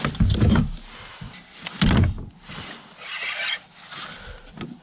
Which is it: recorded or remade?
recorded